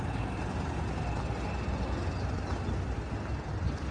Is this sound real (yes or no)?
yes